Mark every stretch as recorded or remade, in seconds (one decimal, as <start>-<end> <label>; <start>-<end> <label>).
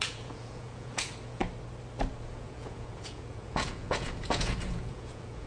0.0-1.4 remade; 1.4-2.2 recorded; 2.2-5.5 remade